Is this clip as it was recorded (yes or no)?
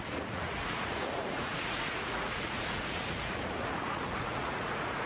no